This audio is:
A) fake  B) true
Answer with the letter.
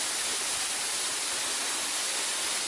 B